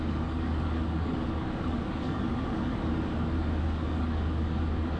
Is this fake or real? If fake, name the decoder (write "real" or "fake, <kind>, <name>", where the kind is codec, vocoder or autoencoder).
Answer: fake, codec, DAC